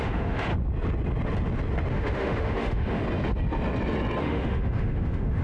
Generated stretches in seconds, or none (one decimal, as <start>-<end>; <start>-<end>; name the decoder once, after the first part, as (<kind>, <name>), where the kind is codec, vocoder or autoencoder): 0.0-0.5 (autoencoder, DAC-VAE); 1.9-3.0; 4.2-5.4